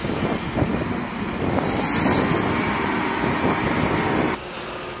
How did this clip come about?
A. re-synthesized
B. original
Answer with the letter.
B